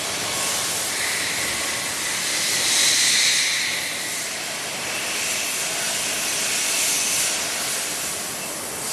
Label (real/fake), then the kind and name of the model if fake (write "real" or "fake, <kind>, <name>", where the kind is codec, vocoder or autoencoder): real